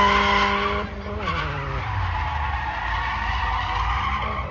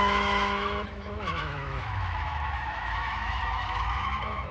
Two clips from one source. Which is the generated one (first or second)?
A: second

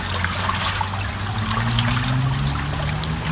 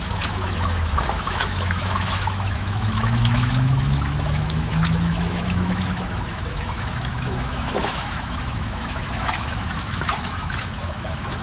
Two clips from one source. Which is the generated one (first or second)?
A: second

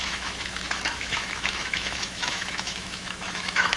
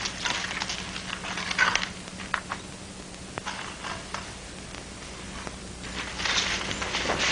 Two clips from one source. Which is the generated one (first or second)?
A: first